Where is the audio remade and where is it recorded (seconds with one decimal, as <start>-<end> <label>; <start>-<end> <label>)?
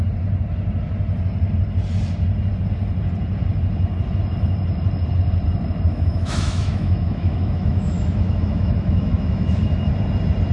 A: 0.0-5.9 recorded; 5.9-9.9 remade; 9.9-10.5 recorded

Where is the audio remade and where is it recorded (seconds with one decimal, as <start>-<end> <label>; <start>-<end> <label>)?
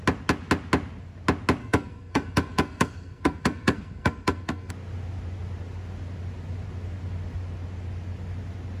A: 0.0-1.6 recorded; 1.6-4.7 remade; 4.7-8.8 recorded